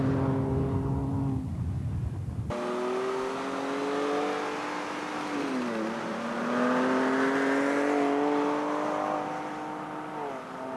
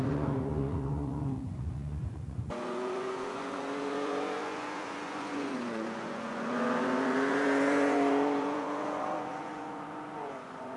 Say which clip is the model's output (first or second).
second